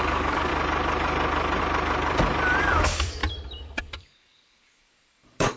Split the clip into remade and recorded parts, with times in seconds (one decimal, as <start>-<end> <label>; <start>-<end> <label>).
0.0-0.5 remade; 0.5-2.6 recorded; 2.6-3.2 remade; 3.2-3.8 recorded; 3.8-5.6 remade